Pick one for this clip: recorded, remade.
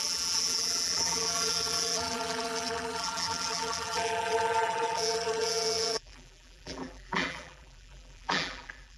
remade